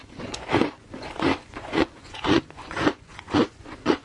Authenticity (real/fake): fake